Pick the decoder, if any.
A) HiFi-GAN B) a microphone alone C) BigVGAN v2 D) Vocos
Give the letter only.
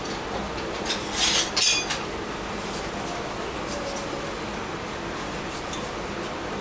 B